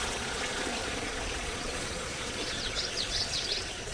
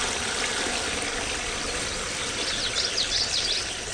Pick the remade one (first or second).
first